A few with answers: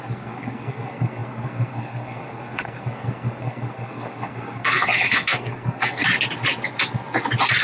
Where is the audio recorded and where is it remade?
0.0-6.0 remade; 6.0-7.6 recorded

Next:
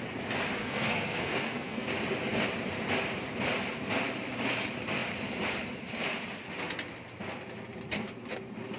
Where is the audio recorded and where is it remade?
0.0-0.6 recorded; 0.6-1.9 remade; 1.9-8.8 recorded

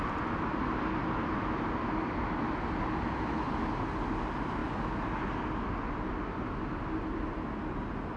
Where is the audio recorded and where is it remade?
0.0-8.2 recorded

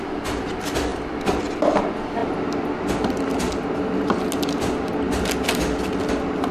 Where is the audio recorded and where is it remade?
0.0-6.5 recorded